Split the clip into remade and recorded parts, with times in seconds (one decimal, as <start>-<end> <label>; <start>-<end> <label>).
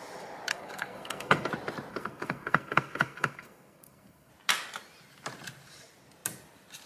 0.0-0.5 recorded; 0.5-1.5 remade; 1.5-1.9 recorded; 1.9-4.3 remade; 4.3-6.9 recorded